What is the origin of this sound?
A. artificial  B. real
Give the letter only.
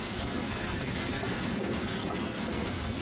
A